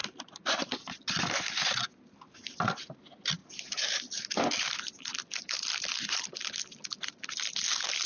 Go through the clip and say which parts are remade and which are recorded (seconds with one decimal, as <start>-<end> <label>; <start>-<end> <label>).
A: 0.0-3.4 recorded; 3.4-4.8 remade; 4.8-8.1 recorded